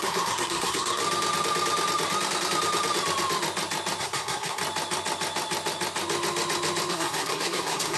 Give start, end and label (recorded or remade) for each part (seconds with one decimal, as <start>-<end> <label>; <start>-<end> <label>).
0.0-1.0 remade; 1.0-4.0 recorded; 4.0-4.6 remade; 4.6-6.9 recorded; 6.9-8.0 remade